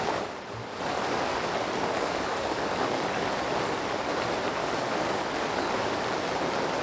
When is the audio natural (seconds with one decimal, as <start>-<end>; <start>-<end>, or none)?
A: 0.0-0.6; 3.3-4.6; 6.0-6.8